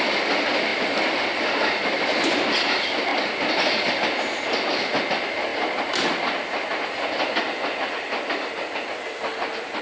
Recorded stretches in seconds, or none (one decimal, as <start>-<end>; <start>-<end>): 0.0-9.8